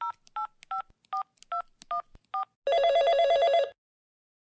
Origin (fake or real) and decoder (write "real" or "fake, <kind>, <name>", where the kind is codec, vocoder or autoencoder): real